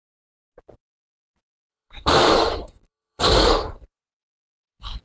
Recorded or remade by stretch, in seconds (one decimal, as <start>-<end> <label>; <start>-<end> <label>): 0.0-1.7 recorded; 1.7-5.0 remade